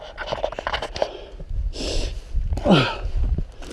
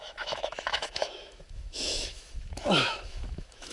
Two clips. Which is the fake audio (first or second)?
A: second